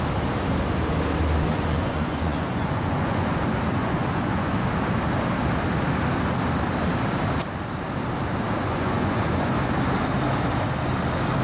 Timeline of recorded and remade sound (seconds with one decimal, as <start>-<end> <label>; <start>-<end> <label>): 0.0-1.5 recorded; 1.5-3.4 remade; 3.4-3.8 recorded; 3.8-4.5 remade; 4.5-8.6 recorded; 8.6-9.5 remade; 9.5-11.4 recorded